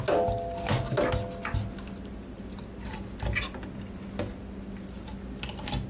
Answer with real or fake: real